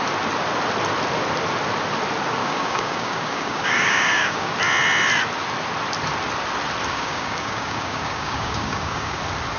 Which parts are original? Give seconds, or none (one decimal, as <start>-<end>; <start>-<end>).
0.0-2.4; 4.5-6.9; 9.2-9.6